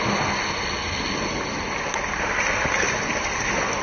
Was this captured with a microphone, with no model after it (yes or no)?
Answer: yes